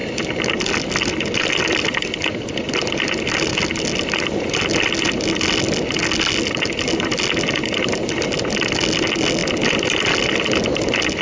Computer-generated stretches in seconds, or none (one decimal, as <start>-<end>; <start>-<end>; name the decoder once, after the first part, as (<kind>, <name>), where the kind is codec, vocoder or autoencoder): none